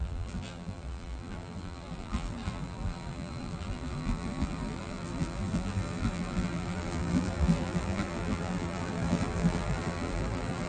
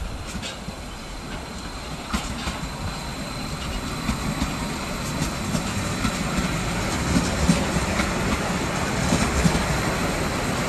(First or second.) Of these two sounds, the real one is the second